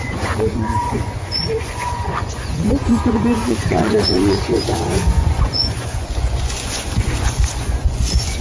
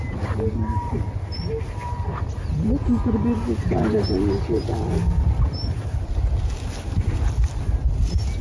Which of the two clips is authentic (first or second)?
second